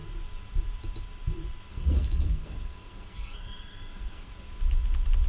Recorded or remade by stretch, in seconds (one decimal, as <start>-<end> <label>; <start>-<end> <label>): 0.0-1.7 recorded; 1.7-4.3 remade; 4.3-5.3 recorded